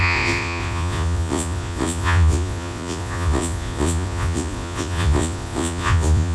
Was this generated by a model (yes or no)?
yes